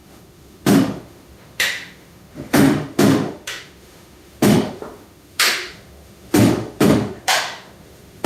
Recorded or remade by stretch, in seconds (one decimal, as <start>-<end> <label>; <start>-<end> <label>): 0.0-8.3 remade